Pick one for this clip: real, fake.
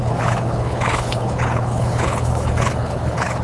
fake